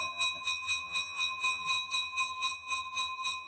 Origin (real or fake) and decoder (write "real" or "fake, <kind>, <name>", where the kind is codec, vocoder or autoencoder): fake, vocoder, HiFi-GAN